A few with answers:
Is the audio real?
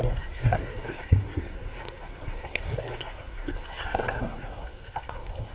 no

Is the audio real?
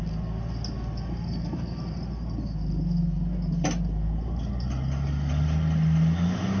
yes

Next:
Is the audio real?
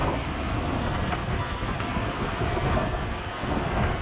no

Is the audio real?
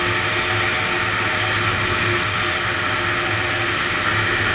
yes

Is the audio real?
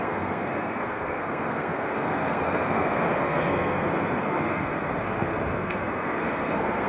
no